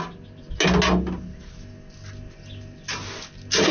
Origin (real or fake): real